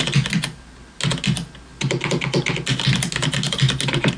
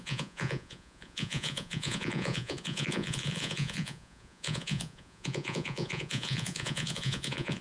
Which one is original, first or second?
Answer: first